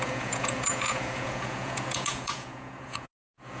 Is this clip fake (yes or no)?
yes